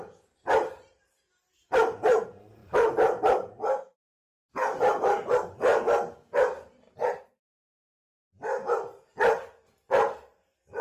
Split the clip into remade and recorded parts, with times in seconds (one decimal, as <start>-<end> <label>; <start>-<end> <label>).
0.0-2.6 recorded; 2.6-4.5 remade; 4.5-10.8 recorded